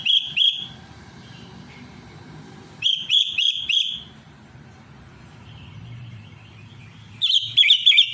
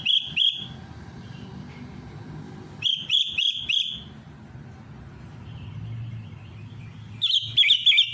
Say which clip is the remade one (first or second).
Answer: first